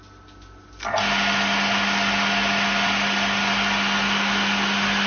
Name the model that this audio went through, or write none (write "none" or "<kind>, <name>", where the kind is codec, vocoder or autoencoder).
none